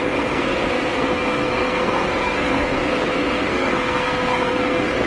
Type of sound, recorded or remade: remade